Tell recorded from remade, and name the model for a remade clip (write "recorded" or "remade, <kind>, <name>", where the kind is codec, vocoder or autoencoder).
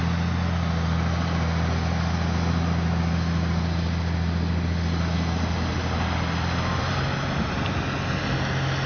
recorded